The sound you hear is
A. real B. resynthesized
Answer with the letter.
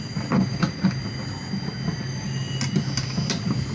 A